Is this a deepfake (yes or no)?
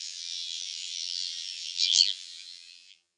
yes